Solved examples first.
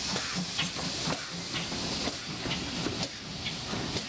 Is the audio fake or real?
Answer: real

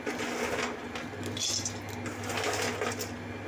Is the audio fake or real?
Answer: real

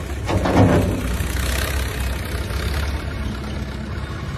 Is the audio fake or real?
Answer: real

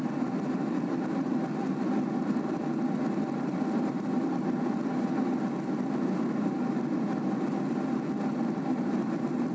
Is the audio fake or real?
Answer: real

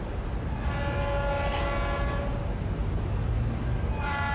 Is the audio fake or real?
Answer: real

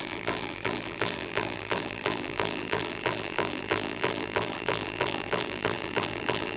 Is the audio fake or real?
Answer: fake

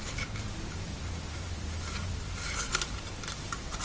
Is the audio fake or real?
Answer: fake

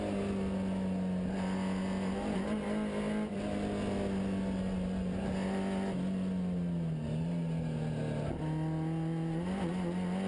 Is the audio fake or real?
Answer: real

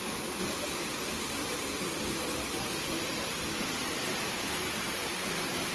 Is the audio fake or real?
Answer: real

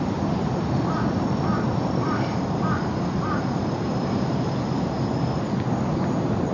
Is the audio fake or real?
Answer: real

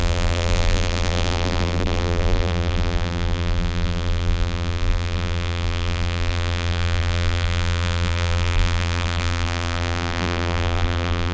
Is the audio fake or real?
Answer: fake